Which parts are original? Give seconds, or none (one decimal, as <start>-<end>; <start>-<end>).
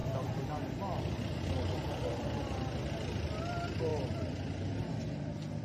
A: 0.0-5.6